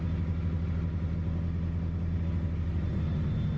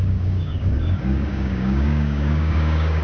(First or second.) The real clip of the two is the first